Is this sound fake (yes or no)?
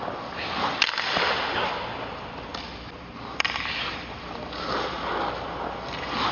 no